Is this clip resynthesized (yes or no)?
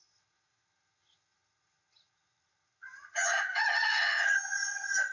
yes